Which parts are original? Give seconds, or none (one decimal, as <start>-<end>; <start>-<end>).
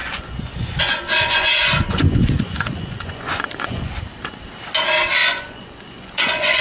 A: 3.9-5.2